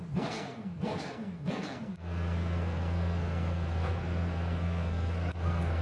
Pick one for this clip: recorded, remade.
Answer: remade